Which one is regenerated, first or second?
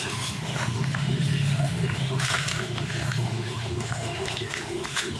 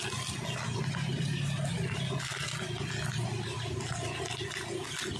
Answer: first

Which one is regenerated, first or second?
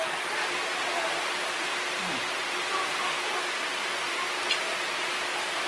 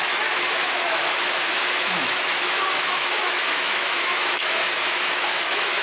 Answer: second